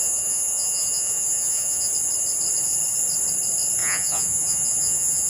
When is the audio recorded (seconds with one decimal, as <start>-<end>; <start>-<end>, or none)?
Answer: 1.9-3.8